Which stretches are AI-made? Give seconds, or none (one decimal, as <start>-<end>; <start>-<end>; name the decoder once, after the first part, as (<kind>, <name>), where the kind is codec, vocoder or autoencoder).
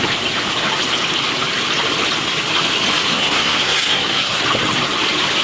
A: 3.1-4.4 (codec, SNAC)